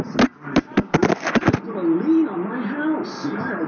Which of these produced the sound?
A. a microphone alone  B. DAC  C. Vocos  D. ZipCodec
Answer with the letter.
A